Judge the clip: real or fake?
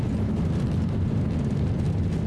real